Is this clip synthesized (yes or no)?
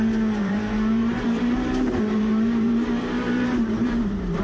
yes